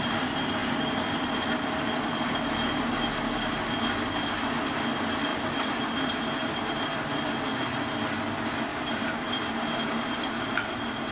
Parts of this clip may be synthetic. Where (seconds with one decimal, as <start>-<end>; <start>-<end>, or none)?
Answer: 5.3-7.3; 8.7-10.2